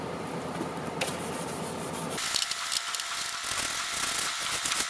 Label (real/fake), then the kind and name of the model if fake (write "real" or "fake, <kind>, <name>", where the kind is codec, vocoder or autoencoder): real